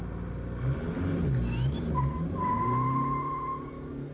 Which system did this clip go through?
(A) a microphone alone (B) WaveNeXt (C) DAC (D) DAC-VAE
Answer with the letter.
A